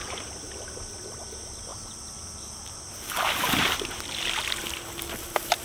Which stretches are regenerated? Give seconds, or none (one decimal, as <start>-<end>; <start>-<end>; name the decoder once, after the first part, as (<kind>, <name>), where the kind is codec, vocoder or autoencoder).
1.7-4.1 (vocoder, BigVGAN v2)